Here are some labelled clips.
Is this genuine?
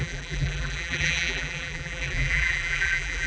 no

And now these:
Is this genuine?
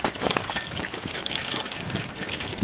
no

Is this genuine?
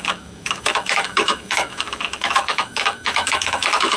no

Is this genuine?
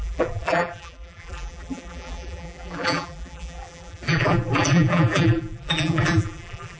no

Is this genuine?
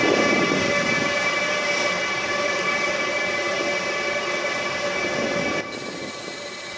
yes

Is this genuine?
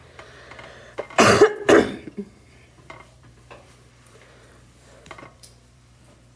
no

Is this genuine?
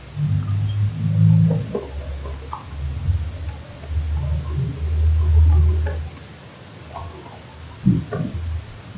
yes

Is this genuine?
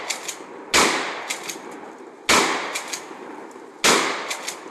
yes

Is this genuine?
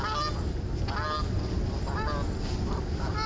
yes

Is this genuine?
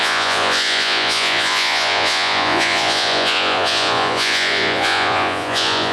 no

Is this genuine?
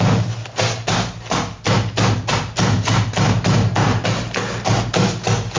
yes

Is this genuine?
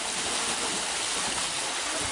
yes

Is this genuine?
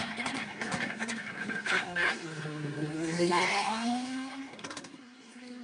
no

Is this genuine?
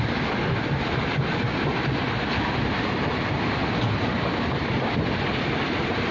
yes